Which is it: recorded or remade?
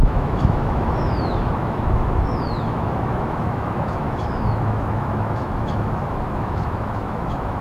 remade